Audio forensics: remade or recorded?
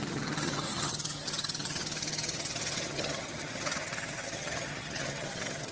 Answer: remade